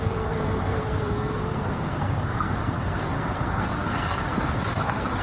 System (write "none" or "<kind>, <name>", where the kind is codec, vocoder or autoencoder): codec, SNAC